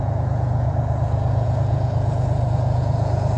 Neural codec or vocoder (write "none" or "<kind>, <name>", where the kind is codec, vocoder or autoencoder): vocoder, Vocos